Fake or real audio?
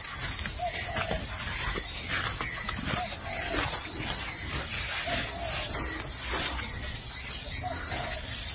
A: real